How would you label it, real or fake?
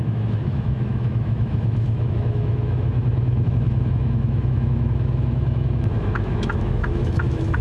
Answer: fake